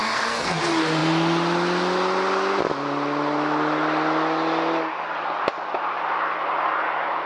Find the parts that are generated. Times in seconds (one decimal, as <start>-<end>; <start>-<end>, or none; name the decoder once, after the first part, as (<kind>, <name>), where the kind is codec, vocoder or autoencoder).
0.0-0.6 (codec, SNAC)